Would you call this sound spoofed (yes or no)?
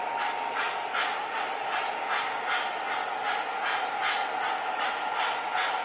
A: no